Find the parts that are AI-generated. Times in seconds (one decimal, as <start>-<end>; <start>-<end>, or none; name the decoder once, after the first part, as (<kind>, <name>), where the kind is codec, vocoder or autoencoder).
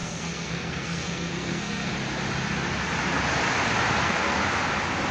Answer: 0.0-1.9 (codec, SNAC); 4.0-4.4